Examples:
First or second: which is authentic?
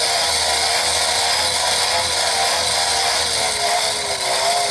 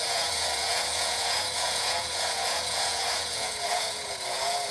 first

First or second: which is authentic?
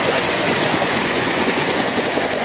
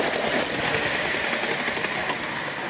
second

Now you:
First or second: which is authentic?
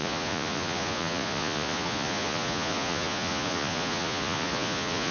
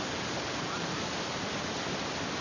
second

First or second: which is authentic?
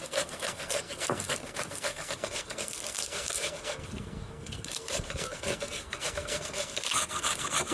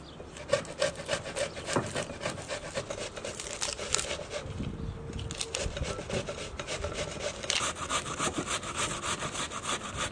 second